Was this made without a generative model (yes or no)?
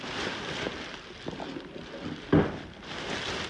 yes